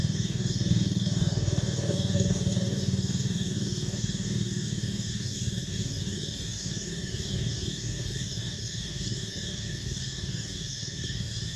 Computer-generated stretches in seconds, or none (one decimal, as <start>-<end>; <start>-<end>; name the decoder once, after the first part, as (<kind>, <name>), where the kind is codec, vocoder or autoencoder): 0.0-11.6 (codec, DAC)